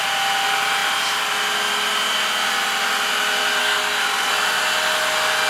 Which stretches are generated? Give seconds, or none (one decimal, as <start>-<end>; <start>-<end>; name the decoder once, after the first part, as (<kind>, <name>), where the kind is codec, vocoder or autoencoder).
3.6-4.3 (codec, SNAC)